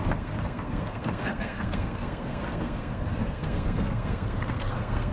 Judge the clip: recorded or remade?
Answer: remade